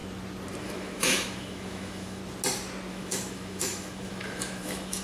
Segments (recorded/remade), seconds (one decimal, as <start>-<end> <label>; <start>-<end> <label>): 0.0-0.6 recorded; 0.6-2.2 remade; 2.2-2.9 recorded; 2.9-5.0 remade